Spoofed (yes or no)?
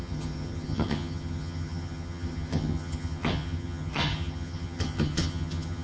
yes